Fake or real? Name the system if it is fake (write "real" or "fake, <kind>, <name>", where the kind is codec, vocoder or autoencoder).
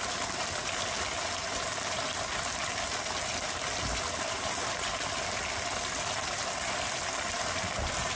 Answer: real